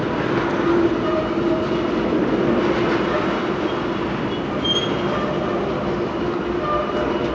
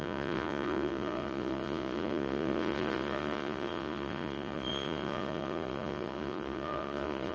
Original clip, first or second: first